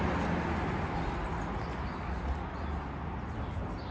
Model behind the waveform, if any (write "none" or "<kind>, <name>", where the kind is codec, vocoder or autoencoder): none